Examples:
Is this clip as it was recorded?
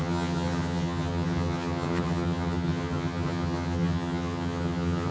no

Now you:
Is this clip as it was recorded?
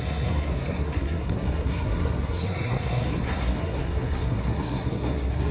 no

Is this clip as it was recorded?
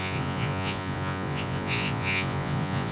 no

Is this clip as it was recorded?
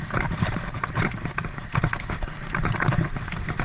yes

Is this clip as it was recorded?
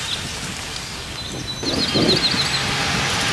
yes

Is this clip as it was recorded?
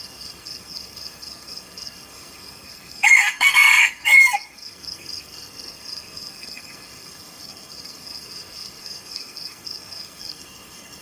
no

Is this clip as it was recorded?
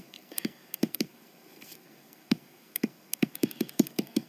no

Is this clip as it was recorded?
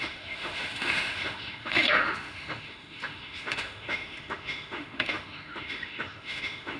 no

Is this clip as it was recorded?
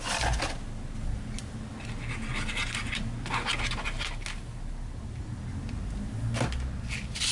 yes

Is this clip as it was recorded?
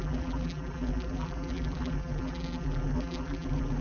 no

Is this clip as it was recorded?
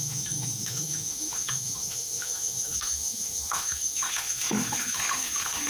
no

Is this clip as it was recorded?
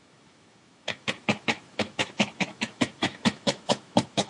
no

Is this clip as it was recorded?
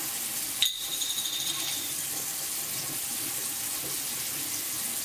yes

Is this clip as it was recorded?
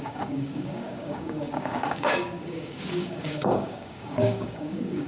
no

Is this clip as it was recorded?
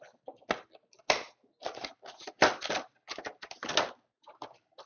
yes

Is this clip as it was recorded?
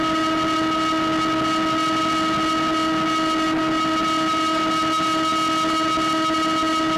yes